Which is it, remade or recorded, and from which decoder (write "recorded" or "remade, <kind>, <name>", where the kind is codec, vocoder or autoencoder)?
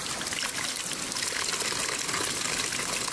recorded